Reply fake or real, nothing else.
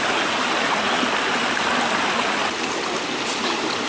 real